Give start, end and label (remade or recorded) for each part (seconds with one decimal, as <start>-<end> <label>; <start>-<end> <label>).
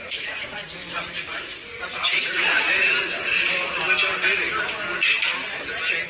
0.0-0.6 remade; 0.6-1.2 recorded; 1.2-3.3 remade; 3.3-6.1 recorded